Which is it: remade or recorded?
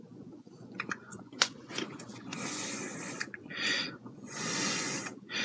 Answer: remade